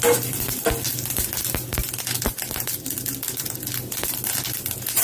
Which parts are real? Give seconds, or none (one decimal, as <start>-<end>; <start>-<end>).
0.0-5.0